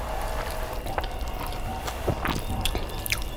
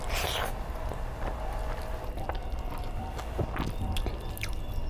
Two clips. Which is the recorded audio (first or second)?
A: second